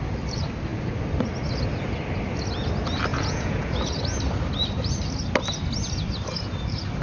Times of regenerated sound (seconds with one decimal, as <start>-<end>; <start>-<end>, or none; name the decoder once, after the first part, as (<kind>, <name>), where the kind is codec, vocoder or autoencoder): 3.1-3.9 (vocoder, Vocos)